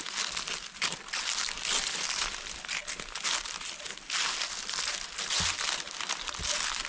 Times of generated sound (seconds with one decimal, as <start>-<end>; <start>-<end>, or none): none

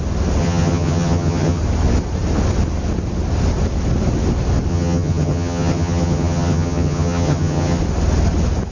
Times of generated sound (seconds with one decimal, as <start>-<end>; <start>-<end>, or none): 0.4-1.6; 4.7-7.8

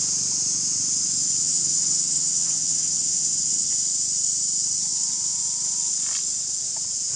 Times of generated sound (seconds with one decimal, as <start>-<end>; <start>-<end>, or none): 1.4-3.7

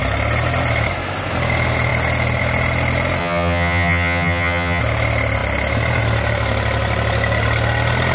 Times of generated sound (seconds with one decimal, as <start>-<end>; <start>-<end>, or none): 3.2-4.8

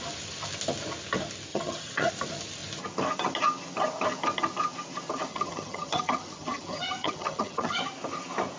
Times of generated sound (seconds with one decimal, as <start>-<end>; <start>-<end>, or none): 1.5-2.1; 5.3-7.8

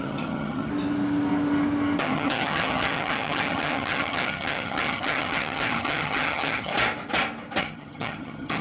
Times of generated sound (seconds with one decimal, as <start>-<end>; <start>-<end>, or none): 0.0-0.7; 2.0-6.7; 7.6-8.6